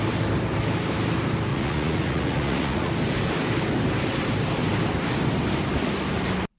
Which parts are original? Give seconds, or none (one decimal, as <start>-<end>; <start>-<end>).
0.0-1.5; 2.9-6.6